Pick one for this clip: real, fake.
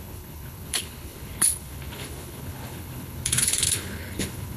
fake